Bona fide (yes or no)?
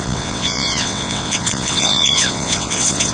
no